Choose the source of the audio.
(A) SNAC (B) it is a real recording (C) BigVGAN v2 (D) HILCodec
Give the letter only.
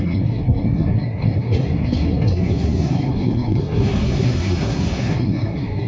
A